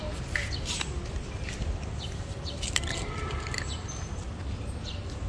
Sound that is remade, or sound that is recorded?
recorded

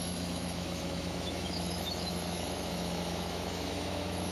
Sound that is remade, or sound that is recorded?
remade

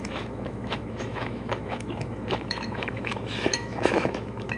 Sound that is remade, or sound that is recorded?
remade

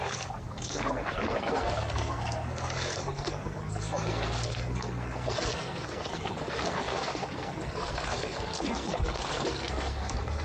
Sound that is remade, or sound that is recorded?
remade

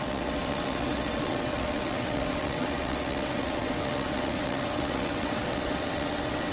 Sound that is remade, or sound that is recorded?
remade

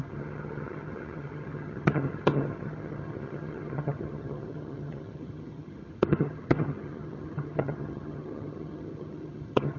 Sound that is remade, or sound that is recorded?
remade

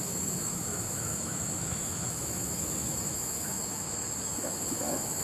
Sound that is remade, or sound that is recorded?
remade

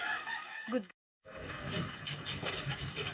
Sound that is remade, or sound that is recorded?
remade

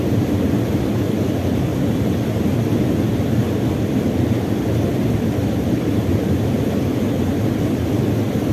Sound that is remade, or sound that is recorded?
recorded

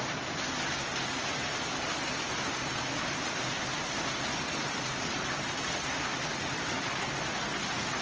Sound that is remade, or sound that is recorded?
recorded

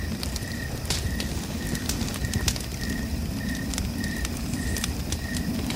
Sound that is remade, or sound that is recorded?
recorded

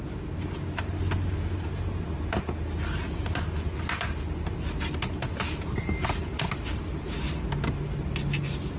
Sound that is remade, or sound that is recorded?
recorded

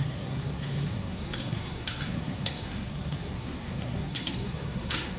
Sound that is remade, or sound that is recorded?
remade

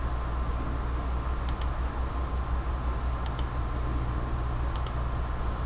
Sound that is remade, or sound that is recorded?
recorded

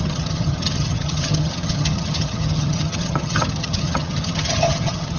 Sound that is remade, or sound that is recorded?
remade